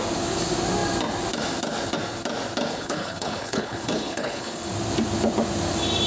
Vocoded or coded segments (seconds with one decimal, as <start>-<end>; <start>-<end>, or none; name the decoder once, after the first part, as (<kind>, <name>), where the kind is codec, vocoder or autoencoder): 2.7-4.7 (codec, HILCodec)